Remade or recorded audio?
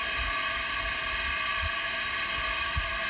recorded